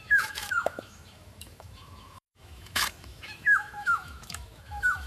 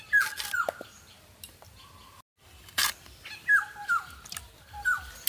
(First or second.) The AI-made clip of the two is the first